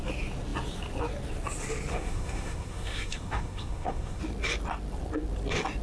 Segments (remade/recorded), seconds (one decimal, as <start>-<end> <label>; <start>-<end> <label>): 0.0-1.9 recorded; 1.9-4.2 remade; 4.2-5.8 recorded